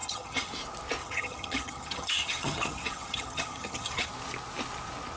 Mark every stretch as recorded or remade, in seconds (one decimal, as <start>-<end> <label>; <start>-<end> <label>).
0.0-0.5 remade; 0.5-1.0 recorded; 1.0-4.1 remade; 4.1-5.2 recorded